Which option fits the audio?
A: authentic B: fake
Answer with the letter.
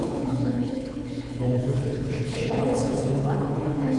B